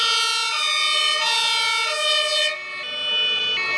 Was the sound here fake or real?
real